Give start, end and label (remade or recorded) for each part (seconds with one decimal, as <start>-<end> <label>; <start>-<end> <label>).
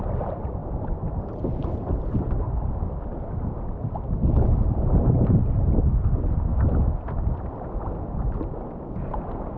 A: 0.0-9.6 recorded